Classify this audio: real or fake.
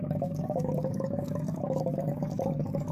fake